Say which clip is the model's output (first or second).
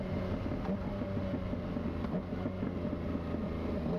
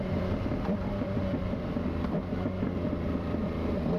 second